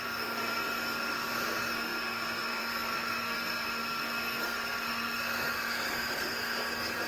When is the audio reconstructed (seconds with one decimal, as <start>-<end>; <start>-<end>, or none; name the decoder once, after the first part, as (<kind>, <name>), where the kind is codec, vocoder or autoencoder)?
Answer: 0.0-7.1 (codec, SNAC)